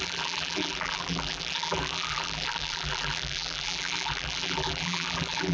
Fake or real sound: fake